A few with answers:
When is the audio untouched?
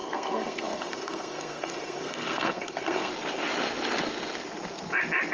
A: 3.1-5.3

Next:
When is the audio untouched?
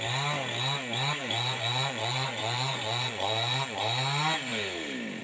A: 0.0-1.2; 3.8-5.2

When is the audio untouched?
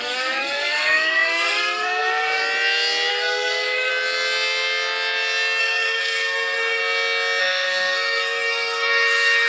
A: 2.4-3.1; 3.9-5.6; 6.8-7.4